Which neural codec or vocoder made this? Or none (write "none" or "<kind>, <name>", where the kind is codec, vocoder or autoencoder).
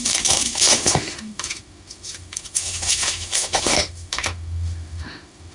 autoencoder, DAC-VAE